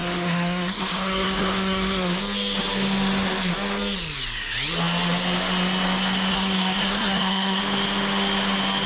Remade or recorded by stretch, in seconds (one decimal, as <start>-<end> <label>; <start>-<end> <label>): 0.0-2.1 remade; 2.1-6.3 recorded; 6.3-7.6 remade; 7.6-8.9 recorded